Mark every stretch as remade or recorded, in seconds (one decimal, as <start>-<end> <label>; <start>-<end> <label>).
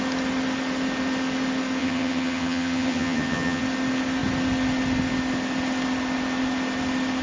0.0-1.8 recorded; 1.8-3.6 remade; 3.6-7.2 recorded